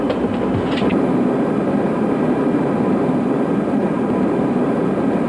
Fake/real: fake